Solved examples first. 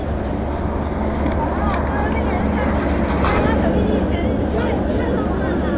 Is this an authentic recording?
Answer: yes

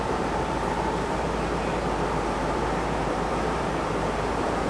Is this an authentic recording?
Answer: no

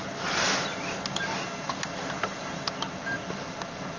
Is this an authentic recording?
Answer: yes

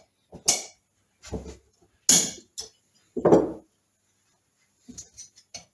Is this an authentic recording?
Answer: yes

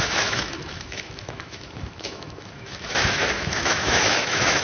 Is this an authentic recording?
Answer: no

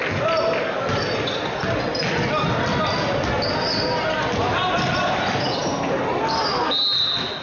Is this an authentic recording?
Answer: yes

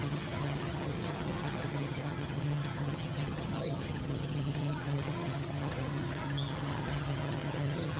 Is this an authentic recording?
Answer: no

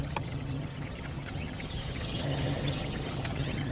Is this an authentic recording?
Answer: no